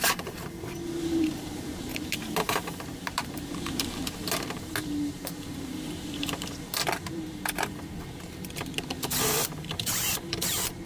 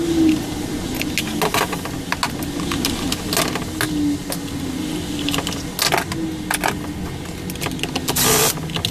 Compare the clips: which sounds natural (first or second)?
second